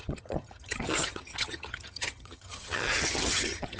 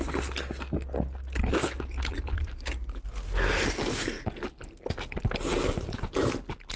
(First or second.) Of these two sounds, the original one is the second